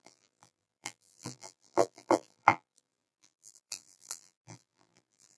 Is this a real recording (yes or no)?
no